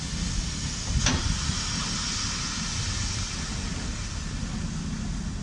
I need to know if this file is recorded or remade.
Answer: recorded